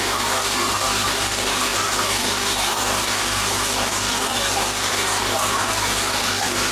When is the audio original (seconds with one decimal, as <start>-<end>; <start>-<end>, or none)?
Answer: none